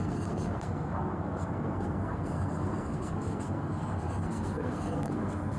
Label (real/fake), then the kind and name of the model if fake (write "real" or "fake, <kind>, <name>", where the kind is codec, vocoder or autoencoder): fake, codec, SNAC